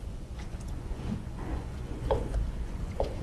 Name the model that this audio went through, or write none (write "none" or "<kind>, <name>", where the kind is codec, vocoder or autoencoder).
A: vocoder, Vocos